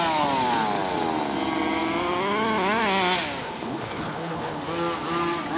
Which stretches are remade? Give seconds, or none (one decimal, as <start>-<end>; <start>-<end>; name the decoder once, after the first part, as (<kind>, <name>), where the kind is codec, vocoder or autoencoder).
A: 3.4-4.6 (codec, HILCodec)